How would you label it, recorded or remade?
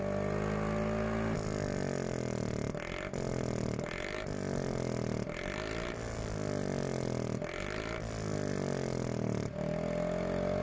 recorded